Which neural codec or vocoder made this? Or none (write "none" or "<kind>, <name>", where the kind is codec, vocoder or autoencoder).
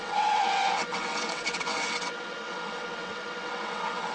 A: vocoder, WaveNeXt